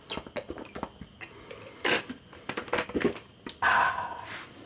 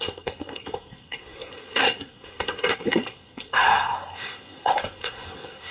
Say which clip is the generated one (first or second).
second